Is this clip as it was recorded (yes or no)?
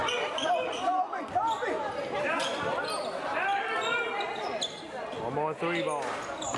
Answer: yes